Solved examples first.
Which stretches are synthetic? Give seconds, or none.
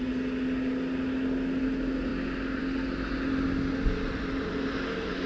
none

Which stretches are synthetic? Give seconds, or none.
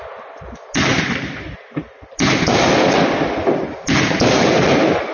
none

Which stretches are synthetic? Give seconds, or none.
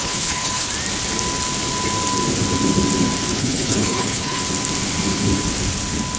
0.0-0.7 (codec, HILCodec); 3.3-4.4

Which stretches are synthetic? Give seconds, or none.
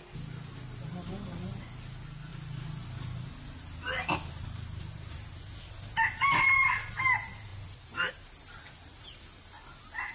none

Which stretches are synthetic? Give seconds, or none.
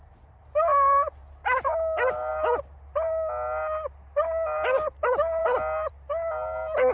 none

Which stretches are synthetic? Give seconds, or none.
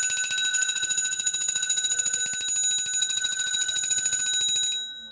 0.5-2.2 (vocoder, HiFi-GAN); 3.0-4.2